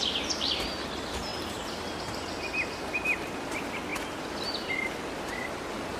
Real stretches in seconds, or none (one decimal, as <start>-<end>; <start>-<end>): 0.0-6.0